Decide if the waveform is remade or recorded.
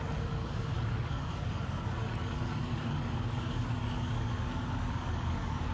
remade